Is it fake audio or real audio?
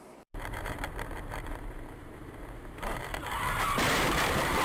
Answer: fake